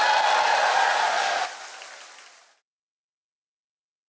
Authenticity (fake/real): real